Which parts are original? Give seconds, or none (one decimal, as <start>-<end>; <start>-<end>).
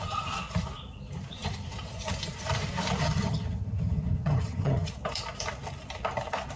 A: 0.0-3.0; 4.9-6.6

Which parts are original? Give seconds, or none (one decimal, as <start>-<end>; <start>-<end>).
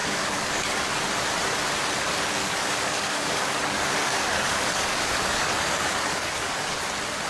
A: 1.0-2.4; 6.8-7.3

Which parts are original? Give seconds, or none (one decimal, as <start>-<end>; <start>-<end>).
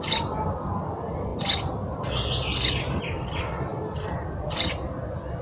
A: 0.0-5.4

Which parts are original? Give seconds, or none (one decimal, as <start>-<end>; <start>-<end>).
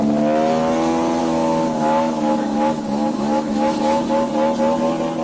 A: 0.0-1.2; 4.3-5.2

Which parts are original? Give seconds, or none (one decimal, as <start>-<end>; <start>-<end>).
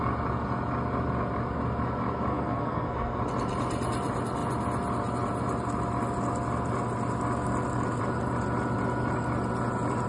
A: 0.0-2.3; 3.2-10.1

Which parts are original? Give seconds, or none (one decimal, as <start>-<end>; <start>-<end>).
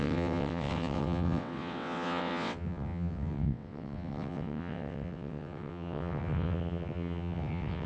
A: none